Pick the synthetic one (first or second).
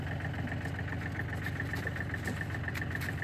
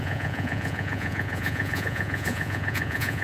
second